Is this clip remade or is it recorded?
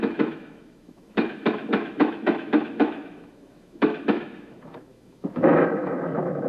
remade